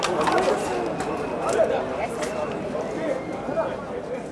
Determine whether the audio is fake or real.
real